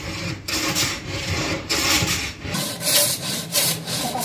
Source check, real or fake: fake